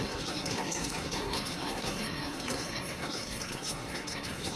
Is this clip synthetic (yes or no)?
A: yes